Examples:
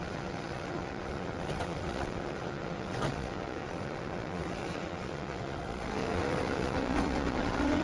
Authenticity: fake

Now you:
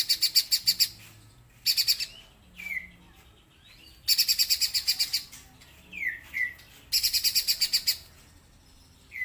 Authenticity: real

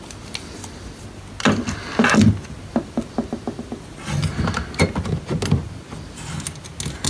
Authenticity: real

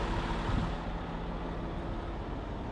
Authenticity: real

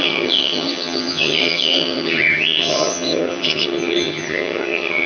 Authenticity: fake